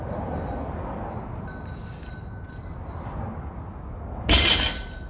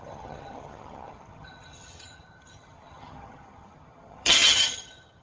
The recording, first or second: first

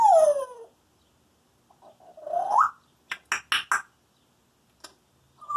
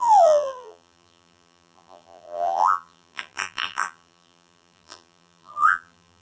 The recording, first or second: first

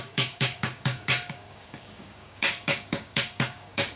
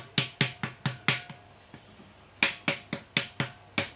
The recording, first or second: second